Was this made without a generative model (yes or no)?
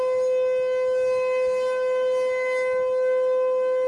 yes